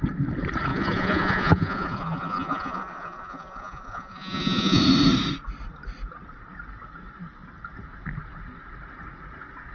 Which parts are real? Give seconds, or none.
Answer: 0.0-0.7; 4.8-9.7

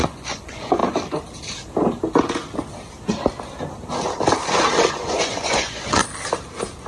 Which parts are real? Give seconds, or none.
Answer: 0.8-4.9; 6.0-6.9

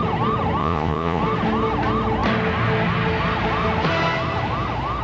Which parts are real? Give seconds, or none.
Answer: 0.0-0.6; 1.2-5.0

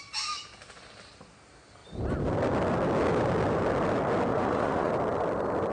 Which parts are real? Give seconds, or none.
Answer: 0.0-4.3; 4.9-5.7

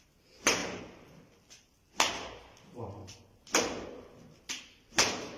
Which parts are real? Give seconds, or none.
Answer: 0.0-5.4